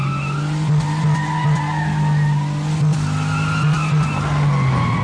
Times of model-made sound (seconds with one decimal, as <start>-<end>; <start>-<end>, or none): none